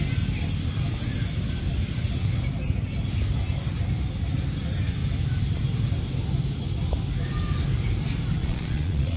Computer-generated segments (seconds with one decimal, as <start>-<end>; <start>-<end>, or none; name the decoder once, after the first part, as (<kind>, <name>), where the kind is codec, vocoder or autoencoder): 8.4-9.2 (vocoder, Vocos)